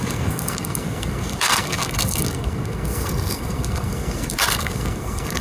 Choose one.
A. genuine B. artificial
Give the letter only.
B